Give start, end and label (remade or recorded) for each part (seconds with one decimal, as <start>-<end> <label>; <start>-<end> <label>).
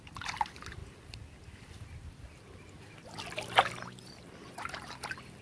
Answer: 0.0-5.4 recorded